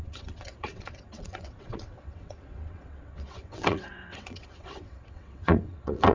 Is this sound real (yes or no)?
no